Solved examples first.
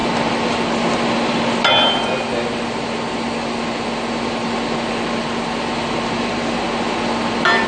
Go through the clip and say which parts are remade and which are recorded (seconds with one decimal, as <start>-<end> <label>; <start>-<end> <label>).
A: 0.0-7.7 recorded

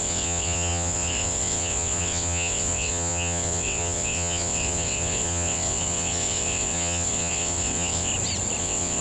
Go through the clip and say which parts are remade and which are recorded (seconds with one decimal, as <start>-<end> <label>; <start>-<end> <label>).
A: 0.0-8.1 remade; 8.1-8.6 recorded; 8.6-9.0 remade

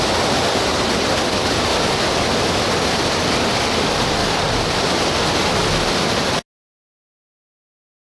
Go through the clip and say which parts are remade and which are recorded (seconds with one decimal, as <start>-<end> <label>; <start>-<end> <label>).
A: 0.0-1.7 recorded; 1.7-3.0 remade; 3.0-4.2 recorded; 4.2-4.9 remade; 4.9-8.1 recorded

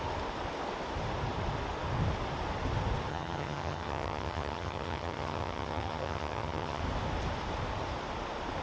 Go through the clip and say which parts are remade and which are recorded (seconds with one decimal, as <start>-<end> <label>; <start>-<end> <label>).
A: 0.0-3.1 recorded; 3.1-6.8 remade; 6.8-8.6 recorded

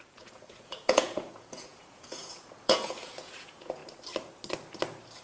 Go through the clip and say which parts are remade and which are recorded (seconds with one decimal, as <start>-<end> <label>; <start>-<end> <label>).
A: 0.0-3.8 remade; 3.8-5.2 recorded